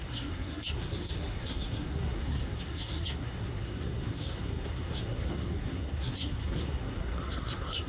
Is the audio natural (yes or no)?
no